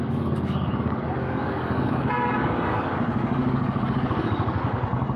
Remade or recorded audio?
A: remade